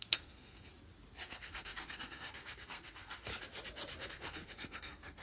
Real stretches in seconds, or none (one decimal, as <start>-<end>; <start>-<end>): 0.7-1.3; 3.3-4.0